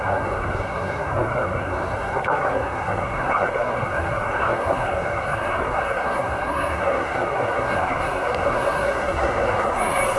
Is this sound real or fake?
fake